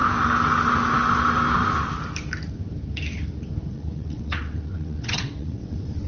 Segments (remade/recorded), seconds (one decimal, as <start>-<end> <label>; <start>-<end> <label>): 0.0-3.7 recorded; 3.7-6.1 remade